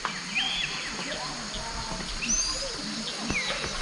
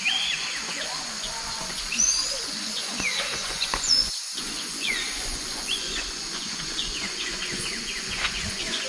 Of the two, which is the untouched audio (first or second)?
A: first